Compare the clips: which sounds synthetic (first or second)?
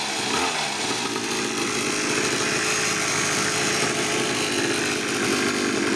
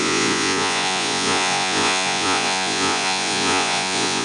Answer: second